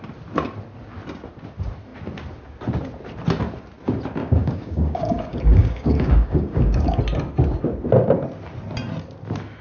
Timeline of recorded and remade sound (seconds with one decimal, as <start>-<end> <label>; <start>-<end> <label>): 0.0-4.2 recorded; 4.2-7.0 remade; 7.0-9.6 recorded